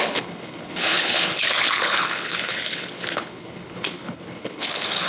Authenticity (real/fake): fake